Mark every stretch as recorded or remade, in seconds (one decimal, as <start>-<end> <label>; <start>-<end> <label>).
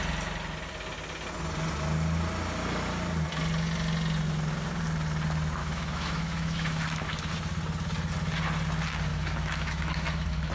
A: 0.0-5.6 recorded; 5.6-7.3 remade; 7.3-9.1 recorded; 9.1-10.5 remade